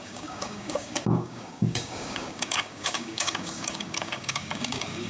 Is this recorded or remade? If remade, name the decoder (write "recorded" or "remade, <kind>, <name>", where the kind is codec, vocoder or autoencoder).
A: remade, codec, DAC